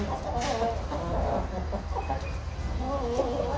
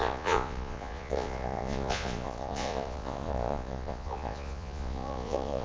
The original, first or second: first